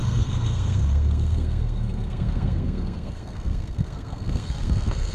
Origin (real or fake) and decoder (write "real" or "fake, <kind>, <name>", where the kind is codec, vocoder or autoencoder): fake, codec, SNAC